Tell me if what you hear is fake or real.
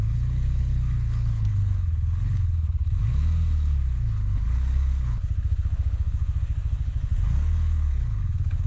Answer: fake